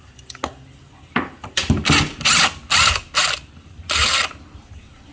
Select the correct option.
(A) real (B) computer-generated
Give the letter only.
A